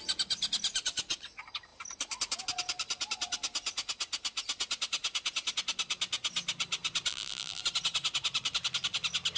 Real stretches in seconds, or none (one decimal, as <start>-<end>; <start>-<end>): 0.0-7.1; 7.6-9.4